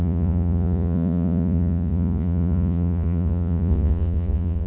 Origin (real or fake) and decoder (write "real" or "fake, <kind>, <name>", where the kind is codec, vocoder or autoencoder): fake, vocoder, Vocos